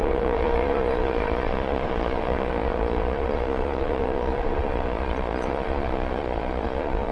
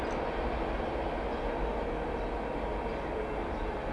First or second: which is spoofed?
first